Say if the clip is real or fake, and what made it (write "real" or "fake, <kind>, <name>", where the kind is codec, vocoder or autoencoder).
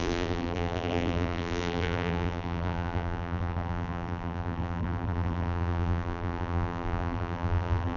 fake, vocoder, BigVGAN v2